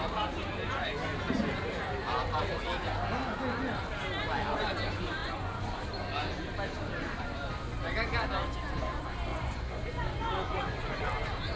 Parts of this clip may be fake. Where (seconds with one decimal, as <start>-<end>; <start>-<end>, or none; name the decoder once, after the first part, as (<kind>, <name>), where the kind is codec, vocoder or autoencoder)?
5.2-5.8 (vocoder, Vocos); 9.3-11.0